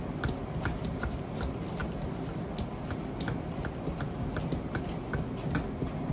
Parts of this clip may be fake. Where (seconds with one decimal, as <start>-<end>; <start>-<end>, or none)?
none